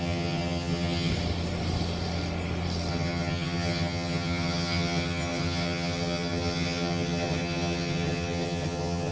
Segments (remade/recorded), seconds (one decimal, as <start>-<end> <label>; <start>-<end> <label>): 0.0-1.1 remade; 1.1-2.9 recorded; 2.9-9.1 remade